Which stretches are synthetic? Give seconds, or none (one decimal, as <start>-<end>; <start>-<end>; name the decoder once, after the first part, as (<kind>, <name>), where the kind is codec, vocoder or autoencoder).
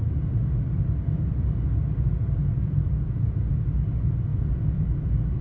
2.5-3.5 (vocoder, Vocos)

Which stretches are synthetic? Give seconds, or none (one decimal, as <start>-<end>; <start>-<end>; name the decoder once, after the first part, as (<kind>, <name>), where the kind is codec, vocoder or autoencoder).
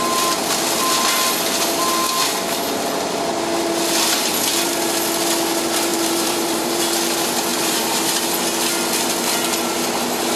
5.9-6.8 (vocoder, BigVGAN v2); 7.5-8.2